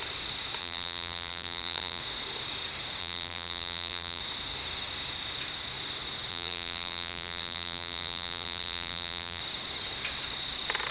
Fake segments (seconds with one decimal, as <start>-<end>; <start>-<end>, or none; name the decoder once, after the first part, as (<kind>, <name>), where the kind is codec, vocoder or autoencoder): 0.6-2.0 (vocoder, BigVGAN v2); 3.0-4.2; 6.3-9.4